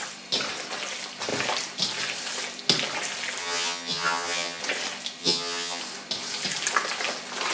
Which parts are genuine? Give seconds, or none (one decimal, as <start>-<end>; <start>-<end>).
0.0-3.4; 4.6-5.2; 5.8-7.5